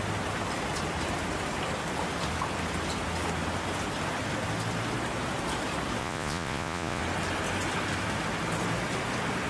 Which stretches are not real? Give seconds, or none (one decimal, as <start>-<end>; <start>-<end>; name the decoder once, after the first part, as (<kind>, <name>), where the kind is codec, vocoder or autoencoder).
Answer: 6.0-7.0 (vocoder, Vocos)